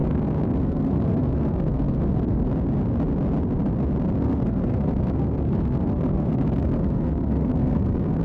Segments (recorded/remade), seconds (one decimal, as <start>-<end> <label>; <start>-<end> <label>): 0.0-2.5 remade; 2.5-4.2 recorded; 4.2-8.2 remade